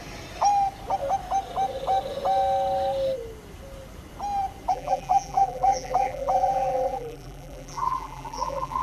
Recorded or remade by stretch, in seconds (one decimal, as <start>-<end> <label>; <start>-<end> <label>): 0.0-4.7 recorded; 4.7-8.8 remade